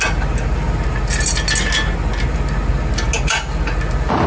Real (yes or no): yes